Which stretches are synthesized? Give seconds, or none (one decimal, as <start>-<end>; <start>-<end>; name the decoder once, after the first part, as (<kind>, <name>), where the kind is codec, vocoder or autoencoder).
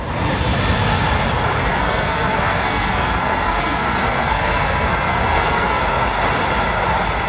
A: 1.7-5.8 (codec, SNAC)